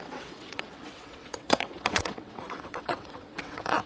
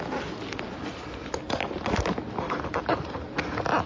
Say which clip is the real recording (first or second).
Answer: second